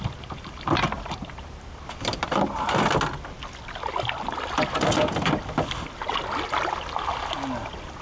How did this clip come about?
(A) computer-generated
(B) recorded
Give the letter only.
B